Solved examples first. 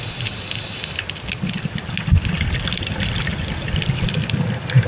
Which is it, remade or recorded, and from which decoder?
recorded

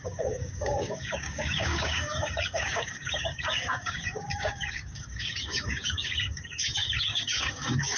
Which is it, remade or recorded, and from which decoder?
remade, codec, DAC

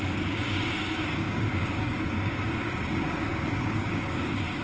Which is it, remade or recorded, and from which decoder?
remade, codec, DAC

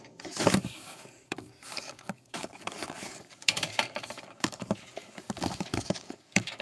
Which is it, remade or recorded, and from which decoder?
remade, codec, DAC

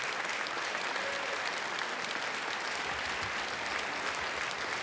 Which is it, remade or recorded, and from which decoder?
recorded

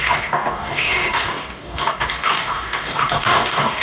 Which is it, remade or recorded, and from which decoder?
remade, codec, DAC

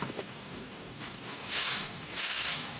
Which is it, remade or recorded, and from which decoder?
remade, codec, DAC